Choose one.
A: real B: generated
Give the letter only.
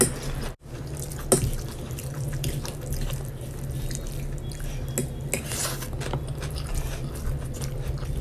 A